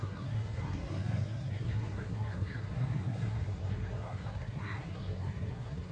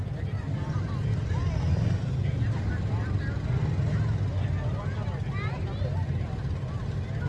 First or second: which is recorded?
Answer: second